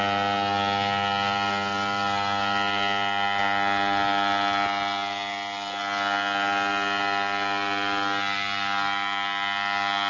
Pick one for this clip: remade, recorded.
recorded